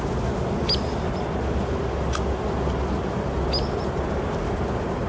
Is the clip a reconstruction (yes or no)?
no